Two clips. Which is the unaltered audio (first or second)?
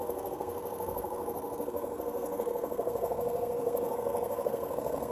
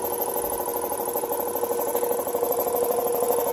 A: second